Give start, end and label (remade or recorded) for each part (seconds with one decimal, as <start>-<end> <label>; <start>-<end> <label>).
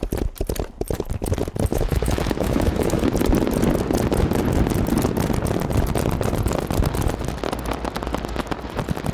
0.0-1.7 recorded; 1.7-3.0 remade; 3.0-9.1 recorded